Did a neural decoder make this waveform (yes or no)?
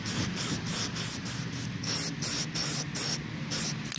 no